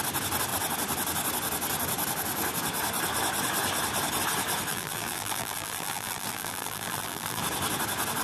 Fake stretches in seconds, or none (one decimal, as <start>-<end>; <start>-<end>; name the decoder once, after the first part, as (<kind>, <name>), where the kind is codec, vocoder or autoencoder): 4.7-7.4 (vocoder, BigVGAN v2)